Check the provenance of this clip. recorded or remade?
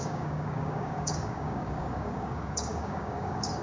remade